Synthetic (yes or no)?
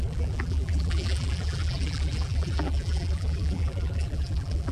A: yes